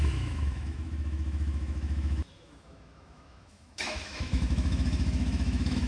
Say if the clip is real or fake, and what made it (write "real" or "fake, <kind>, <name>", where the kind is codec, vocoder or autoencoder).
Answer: fake, autoencoder, DAC-VAE